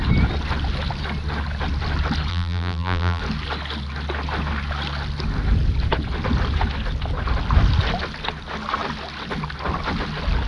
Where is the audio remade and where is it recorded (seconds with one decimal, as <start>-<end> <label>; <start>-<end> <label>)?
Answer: 0.0-2.3 recorded; 2.3-3.2 remade; 3.2-10.5 recorded